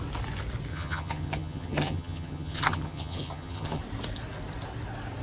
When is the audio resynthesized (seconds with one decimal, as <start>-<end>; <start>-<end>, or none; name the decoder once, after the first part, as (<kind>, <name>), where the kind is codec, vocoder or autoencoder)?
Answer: 0.7-3.8 (vocoder, HiFi-GAN)